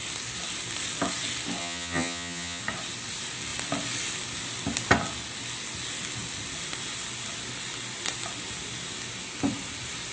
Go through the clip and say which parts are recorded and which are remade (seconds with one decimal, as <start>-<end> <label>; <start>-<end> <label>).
0.0-1.6 recorded; 1.6-2.6 remade; 2.6-10.1 recorded